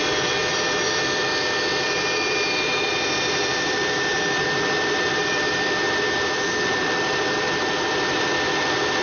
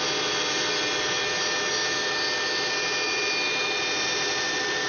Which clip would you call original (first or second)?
second